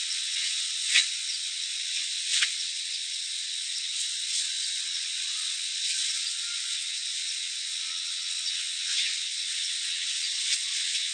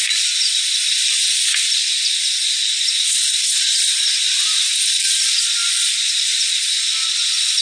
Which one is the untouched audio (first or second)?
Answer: second